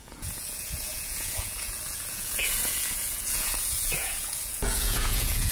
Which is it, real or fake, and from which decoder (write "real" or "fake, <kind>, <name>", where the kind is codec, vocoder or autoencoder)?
fake, vocoder, Vocos